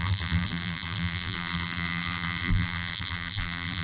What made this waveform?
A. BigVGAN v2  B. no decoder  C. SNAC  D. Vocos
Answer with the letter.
A